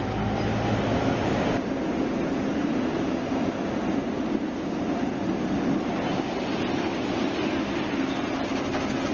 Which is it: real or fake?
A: real